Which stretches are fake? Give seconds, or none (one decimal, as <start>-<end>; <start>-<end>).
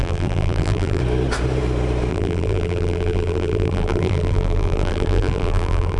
0.0-1.0; 2.1-6.0